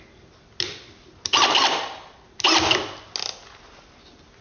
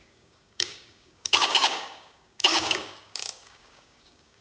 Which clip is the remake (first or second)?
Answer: second